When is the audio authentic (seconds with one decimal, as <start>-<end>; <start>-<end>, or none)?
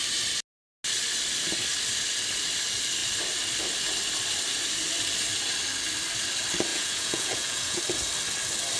0.0-6.7; 7.8-8.8